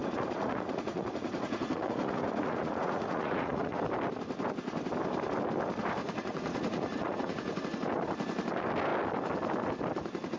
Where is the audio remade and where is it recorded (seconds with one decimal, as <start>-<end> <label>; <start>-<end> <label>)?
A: 0.0-3.8 remade; 3.8-6.0 recorded; 6.0-7.6 remade; 7.6-10.4 recorded